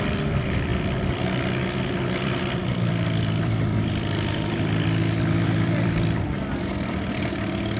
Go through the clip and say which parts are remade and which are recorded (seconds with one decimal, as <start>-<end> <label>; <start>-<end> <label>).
0.0-0.7 remade; 0.7-1.7 recorded; 1.7-7.8 remade